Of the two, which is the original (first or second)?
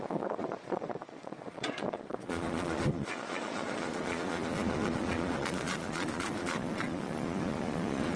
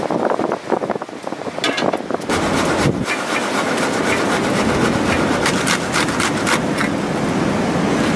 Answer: second